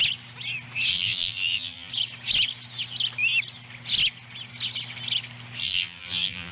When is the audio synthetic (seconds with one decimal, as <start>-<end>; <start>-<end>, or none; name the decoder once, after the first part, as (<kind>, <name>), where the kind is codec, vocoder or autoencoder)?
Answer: 0.9-1.9 (vocoder, BigVGAN v2); 5.6-6.5